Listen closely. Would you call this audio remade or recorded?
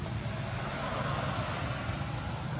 recorded